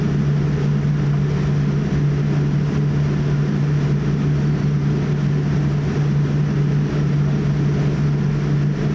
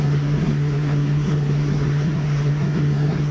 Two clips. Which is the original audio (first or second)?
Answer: first